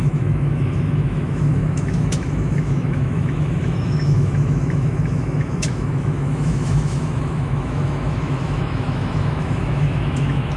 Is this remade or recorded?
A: remade